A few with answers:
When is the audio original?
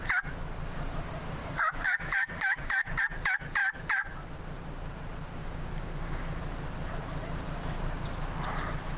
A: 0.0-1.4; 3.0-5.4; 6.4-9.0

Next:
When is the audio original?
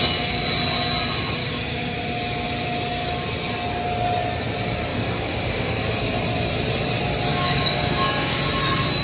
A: 0.0-1.4; 2.0-4.9; 5.8-7.3; 8.4-9.0